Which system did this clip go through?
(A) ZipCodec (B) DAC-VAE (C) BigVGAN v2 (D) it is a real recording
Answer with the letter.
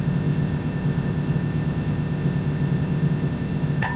A